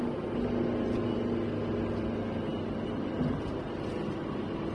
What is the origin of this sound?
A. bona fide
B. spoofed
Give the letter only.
A